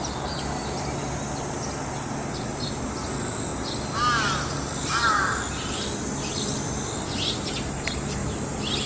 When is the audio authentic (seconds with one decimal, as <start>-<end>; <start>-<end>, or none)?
0.0-8.9